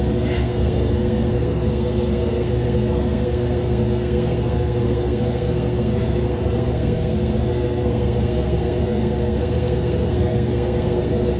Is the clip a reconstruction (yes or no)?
yes